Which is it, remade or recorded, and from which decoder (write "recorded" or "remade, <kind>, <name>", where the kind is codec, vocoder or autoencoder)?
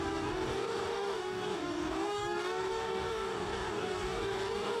remade, codec, DAC